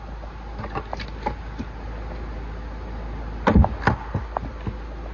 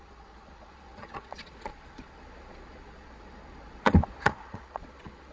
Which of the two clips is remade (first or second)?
second